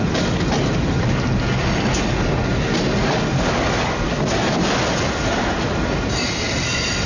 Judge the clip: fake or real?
real